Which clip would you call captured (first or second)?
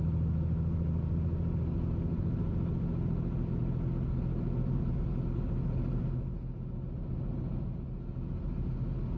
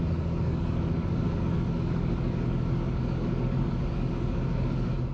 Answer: first